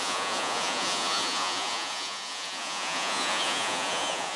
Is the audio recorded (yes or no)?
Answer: no